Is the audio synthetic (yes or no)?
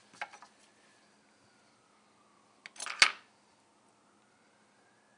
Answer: no